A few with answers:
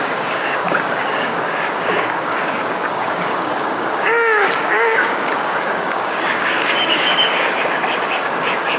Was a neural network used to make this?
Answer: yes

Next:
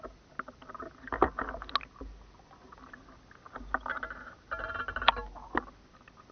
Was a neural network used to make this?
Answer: no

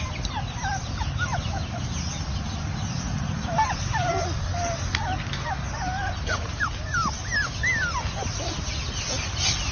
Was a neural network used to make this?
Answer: no